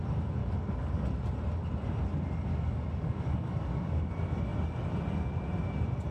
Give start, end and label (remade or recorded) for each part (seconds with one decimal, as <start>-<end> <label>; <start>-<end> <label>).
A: 0.0-0.4 recorded; 0.4-1.1 remade; 1.1-2.5 recorded; 2.5-4.1 remade; 4.1-6.1 recorded